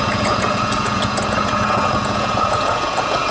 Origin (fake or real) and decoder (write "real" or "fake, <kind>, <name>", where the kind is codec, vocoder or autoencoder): fake, vocoder, Vocos